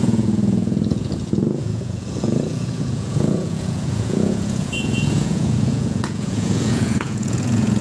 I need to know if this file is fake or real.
fake